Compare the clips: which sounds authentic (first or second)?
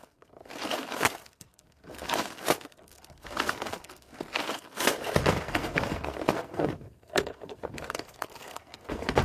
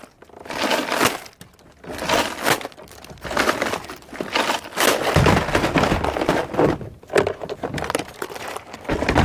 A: second